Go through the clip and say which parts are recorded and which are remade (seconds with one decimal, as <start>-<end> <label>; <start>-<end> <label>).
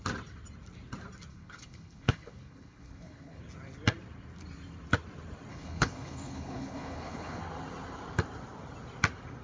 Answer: 0.0-1.3 recorded; 1.3-3.4 remade; 3.4-5.5 recorded; 5.5-7.4 remade; 7.4-9.4 recorded